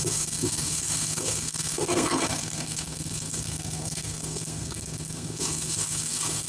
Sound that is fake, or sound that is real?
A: fake